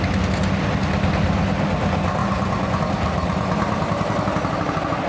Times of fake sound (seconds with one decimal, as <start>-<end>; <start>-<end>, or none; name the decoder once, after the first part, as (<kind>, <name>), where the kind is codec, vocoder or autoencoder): 2.2-2.8 (vocoder, Vocos)